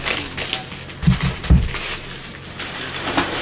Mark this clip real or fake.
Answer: real